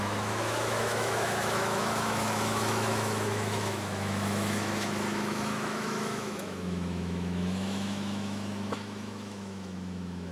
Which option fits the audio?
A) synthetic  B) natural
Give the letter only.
A